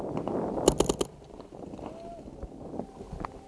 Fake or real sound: real